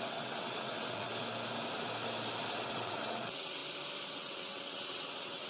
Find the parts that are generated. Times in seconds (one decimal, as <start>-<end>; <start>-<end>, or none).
0.0-1.1; 2.5-3.6; 4.1-5.5